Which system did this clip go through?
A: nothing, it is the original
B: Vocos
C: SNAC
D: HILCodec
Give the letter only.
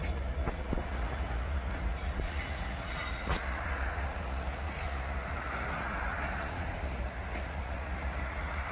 B